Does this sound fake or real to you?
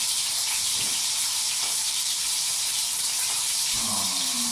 fake